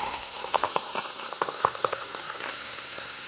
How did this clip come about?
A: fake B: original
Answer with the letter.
A